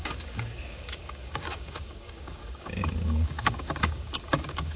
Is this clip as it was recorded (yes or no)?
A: no